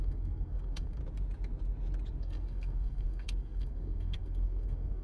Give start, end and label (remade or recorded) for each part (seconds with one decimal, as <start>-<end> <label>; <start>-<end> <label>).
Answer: 0.0-1.0 remade; 1.0-2.2 recorded; 2.2-5.0 remade